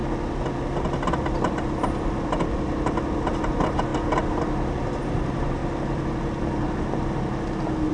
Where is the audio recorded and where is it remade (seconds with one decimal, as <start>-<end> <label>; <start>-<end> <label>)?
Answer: 0.0-3.4 recorded; 3.4-3.9 remade; 3.9-5.0 recorded; 5.0-5.6 remade; 5.6-7.9 recorded